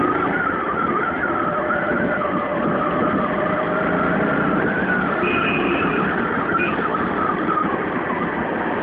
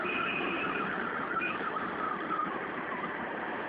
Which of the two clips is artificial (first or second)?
second